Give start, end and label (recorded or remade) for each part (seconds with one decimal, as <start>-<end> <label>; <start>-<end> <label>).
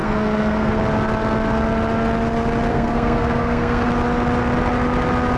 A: 0.0-0.8 remade; 0.8-2.7 recorded; 2.7-3.9 remade; 3.9-5.4 recorded